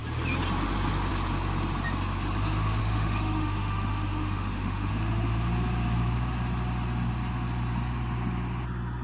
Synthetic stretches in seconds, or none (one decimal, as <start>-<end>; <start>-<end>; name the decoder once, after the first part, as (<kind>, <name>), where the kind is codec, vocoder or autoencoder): 2.8-4.9 (autoencoder, DAC-VAE)